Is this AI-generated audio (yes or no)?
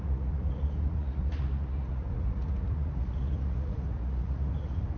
yes